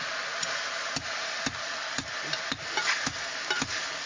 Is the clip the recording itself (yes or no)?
yes